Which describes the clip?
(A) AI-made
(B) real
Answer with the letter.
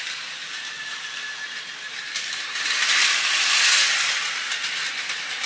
B